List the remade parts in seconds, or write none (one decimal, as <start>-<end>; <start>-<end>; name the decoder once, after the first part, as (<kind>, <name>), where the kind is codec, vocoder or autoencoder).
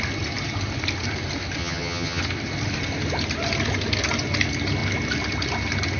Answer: 1.6-2.2 (vocoder, HiFi-GAN)